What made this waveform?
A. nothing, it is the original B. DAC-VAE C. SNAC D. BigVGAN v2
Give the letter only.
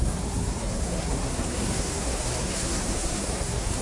C